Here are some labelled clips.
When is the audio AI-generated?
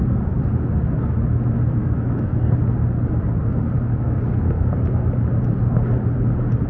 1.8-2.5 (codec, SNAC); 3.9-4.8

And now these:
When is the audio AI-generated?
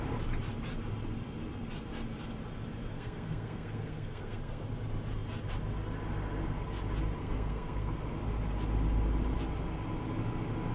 2.8-4.6 (codec, SNAC); 7.2-7.9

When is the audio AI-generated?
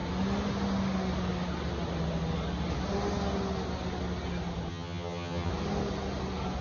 4.7-5.5 (vocoder, HiFi-GAN)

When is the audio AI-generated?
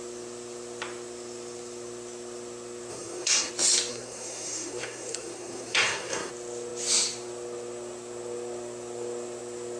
2.9-3.5 (codec, SNAC); 3.9-6.3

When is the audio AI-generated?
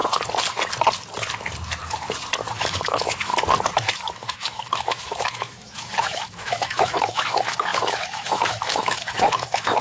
2.6-3.3 (autoencoder, DAC-VAE); 4.1-9.8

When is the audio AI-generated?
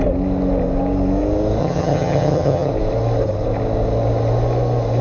1.6-2.7 (vocoder, HiFi-GAN)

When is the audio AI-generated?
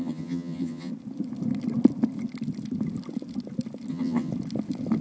0.0-0.9 (vocoder, HiFi-GAN); 3.9-4.3